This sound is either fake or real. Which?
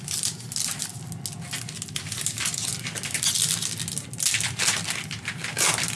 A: real